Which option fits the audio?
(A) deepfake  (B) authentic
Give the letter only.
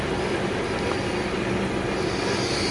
B